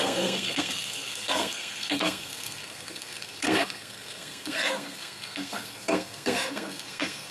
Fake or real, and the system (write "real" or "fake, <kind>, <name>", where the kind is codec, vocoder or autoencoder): fake, codec, SNAC